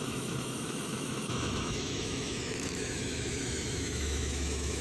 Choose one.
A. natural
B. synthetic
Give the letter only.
B